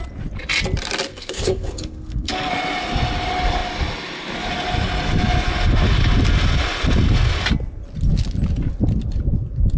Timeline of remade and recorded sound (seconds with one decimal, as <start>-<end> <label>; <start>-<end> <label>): 0.0-1.1 recorded; 1.1-2.5 remade; 2.5-9.8 recorded